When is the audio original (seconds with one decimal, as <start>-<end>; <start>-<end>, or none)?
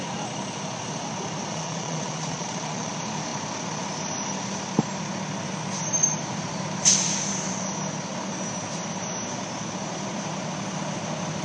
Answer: 0.0-1.5; 2.9-11.4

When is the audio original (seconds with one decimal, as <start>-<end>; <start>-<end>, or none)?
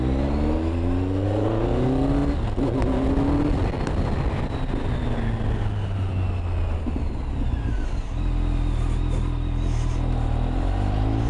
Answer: 0.0-11.3